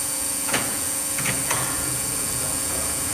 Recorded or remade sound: remade